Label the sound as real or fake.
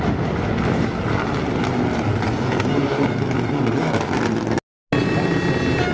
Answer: real